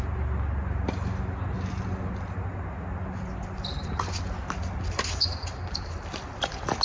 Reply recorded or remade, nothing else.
recorded